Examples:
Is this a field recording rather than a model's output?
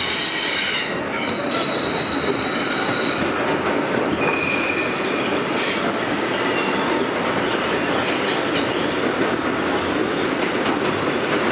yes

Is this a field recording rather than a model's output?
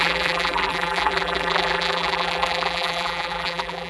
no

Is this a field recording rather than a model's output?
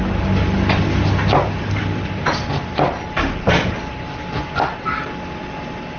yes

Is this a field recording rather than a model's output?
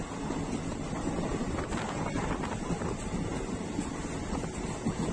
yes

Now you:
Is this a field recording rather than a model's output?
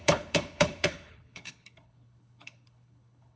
no